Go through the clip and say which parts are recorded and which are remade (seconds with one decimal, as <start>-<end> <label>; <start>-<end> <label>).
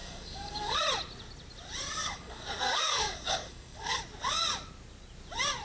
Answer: 0.0-0.8 remade; 0.8-2.0 recorded; 2.0-4.0 remade; 4.0-5.6 recorded